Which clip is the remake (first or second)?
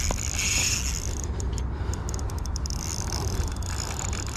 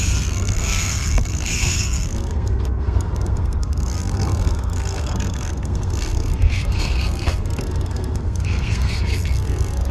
second